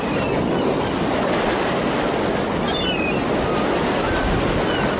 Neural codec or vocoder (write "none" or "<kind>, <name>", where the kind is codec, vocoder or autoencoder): none